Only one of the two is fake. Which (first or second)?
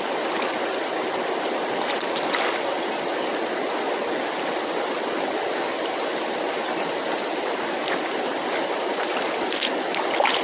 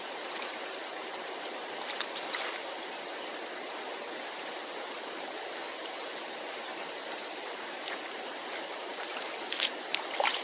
second